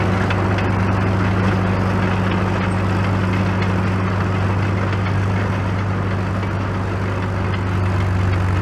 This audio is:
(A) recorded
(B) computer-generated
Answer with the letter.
A